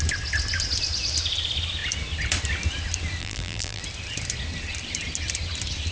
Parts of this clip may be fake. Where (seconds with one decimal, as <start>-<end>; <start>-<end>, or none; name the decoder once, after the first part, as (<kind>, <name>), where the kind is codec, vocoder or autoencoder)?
3.2-3.8 (vocoder, BigVGAN v2)